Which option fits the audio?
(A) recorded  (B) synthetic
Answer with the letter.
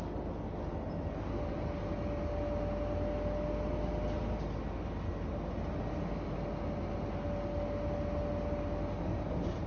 A